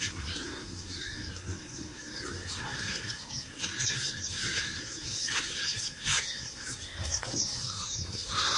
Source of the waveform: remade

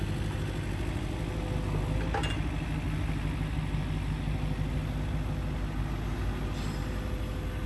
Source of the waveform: recorded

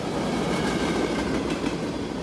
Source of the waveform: recorded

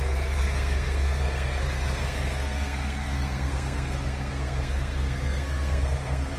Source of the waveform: remade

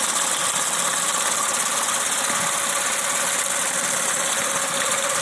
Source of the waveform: recorded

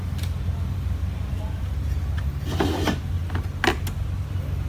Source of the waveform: recorded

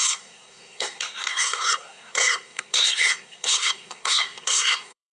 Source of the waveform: remade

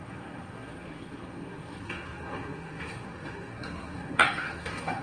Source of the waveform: remade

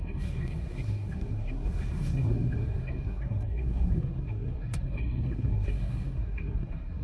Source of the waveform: remade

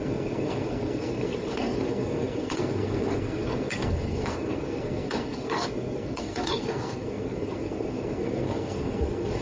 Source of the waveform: remade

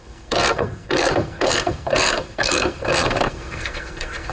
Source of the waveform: remade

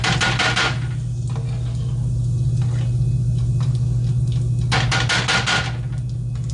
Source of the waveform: recorded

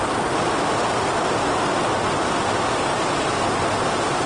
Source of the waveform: recorded